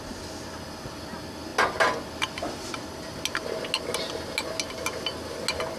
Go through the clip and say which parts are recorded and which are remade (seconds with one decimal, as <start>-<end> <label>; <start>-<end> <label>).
0.0-5.8 recorded